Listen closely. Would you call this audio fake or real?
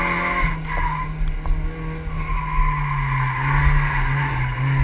real